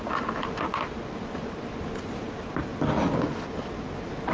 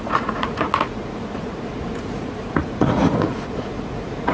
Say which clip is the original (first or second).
first